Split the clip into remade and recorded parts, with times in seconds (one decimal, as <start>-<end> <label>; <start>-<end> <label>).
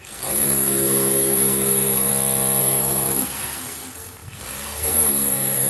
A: 0.0-2.1 remade; 2.1-2.6 recorded; 2.6-5.7 remade